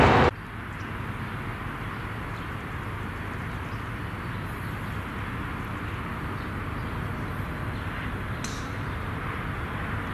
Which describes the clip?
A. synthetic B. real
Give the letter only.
B